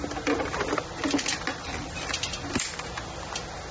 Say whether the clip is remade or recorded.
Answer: recorded